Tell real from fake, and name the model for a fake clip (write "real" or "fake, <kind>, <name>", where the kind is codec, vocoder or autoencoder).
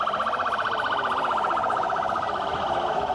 real